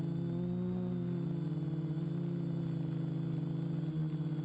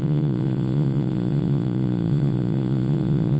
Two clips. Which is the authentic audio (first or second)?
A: first